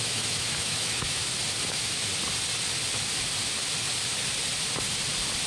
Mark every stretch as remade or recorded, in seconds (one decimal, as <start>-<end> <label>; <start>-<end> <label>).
0.0-1.2 remade; 1.2-1.7 recorded; 1.7-2.1 remade; 2.1-5.5 recorded